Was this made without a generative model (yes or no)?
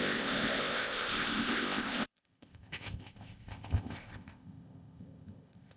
no